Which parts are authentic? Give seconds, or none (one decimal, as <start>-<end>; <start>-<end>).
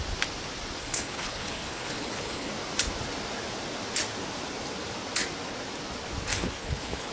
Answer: 0.0-0.8; 2.5-6.3